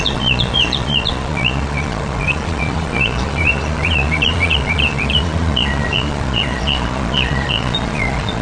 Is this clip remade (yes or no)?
yes